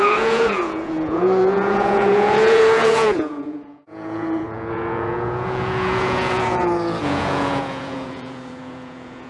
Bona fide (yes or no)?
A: no